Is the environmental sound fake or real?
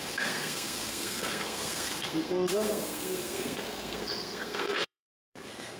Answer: fake